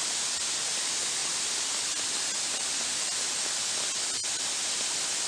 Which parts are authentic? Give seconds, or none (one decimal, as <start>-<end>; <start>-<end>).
0.0-5.3